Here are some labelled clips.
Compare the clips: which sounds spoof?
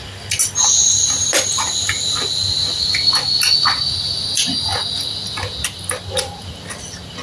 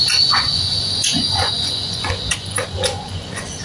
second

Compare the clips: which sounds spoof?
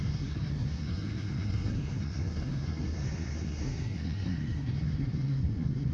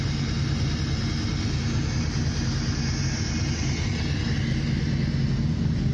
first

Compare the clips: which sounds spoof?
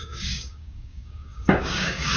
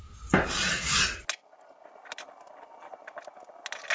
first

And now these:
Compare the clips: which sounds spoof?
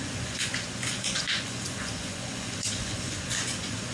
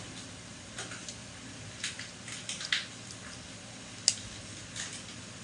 first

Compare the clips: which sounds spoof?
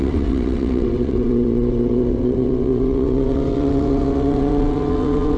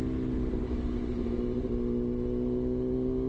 first